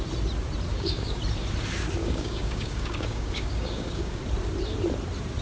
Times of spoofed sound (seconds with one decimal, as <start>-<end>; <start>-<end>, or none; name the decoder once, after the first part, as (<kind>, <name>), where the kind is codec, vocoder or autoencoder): 0.7-1.2 (codec, DAC); 2.0-4.2